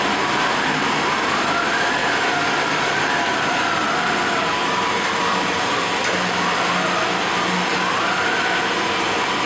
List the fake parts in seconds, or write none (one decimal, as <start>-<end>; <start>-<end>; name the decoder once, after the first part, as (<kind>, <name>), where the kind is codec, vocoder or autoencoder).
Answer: none